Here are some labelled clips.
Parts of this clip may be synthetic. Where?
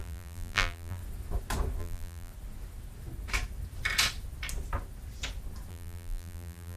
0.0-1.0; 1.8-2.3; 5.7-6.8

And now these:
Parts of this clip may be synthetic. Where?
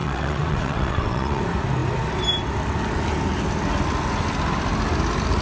0.0-1.4